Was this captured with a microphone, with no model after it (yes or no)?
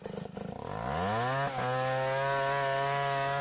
yes